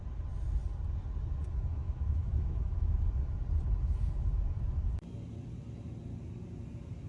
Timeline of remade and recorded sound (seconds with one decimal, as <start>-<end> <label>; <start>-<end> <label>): 0.0-1.7 recorded; 1.7-3.0 remade; 3.0-7.1 recorded

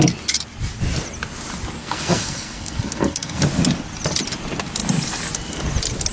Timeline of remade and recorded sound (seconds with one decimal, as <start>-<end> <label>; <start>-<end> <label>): 0.0-1.8 recorded; 1.8-3.4 remade; 3.4-6.1 recorded

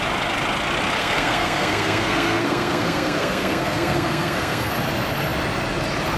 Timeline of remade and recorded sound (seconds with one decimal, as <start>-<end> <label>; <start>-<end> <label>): 0.0-1.0 recorded; 1.0-4.7 remade; 4.7-6.2 recorded

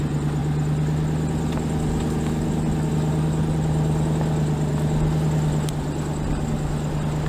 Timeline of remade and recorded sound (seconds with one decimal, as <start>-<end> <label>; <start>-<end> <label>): 0.0-7.3 recorded

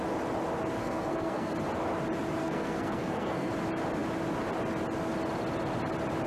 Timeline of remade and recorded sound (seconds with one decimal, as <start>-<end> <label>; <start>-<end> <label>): 0.0-0.8 recorded; 0.8-1.5 remade; 1.5-2.4 recorded; 2.4-3.5 remade; 3.5-6.3 recorded

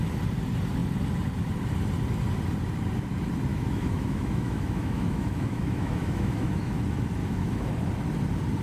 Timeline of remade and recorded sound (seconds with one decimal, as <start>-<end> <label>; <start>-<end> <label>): 0.0-3.5 recorded; 3.5-6.8 remade; 6.8-7.2 recorded; 7.2-7.7 remade; 7.7-8.6 recorded